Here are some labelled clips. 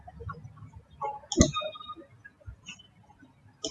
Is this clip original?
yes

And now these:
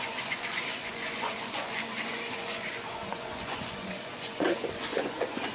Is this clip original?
no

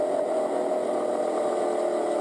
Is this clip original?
yes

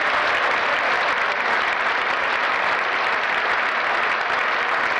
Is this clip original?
yes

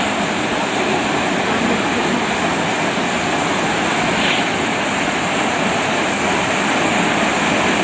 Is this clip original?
yes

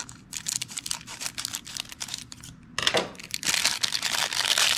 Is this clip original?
yes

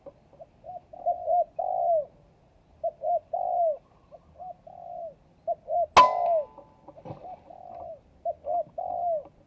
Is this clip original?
yes